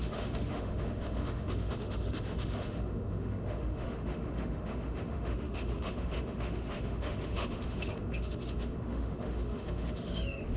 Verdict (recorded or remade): remade